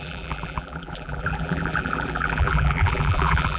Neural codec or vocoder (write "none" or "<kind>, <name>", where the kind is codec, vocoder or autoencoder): vocoder, BigVGAN v2